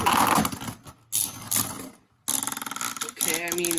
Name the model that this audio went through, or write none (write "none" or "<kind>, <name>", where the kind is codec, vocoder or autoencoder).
none